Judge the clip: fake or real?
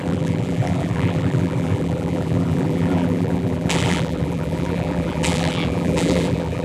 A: fake